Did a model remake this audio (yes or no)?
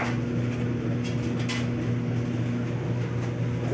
no